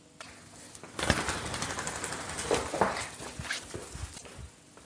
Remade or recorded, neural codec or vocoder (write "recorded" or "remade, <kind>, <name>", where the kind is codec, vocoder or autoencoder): recorded